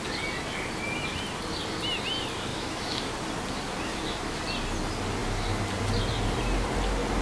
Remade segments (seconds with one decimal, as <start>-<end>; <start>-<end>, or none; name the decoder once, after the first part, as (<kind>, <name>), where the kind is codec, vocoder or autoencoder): 2.5-3.1 (autoencoder, DAC-VAE); 3.9-4.4